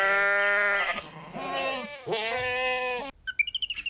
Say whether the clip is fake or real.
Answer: real